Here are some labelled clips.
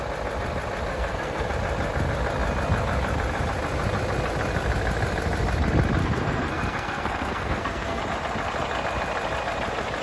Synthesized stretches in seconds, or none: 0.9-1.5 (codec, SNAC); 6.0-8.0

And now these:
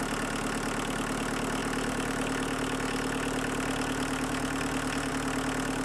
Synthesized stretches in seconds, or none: 1.6-5.1 (vocoder, BigVGAN v2)

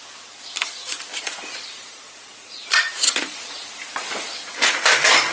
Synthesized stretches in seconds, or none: 1.1-4.3 (vocoder, Vocos)